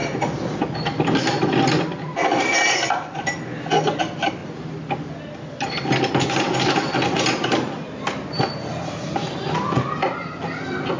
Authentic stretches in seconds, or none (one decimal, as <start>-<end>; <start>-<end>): 0.0-11.0